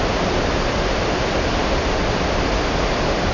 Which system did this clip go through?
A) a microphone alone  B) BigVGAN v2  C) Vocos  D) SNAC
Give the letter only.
B